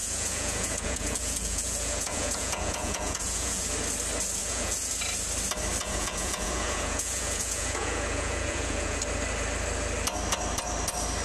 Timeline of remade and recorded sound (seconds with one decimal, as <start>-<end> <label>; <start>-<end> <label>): 0.0-3.7 remade; 3.7-4.4 recorded; 4.4-4.9 remade; 4.9-5.8 recorded; 5.8-9.0 remade; 9.0-11.2 recorded